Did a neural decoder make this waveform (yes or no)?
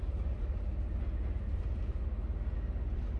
no